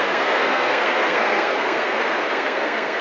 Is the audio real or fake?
fake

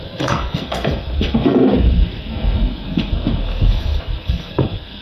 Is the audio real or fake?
fake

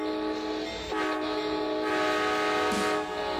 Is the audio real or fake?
real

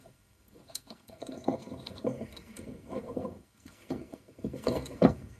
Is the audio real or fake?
fake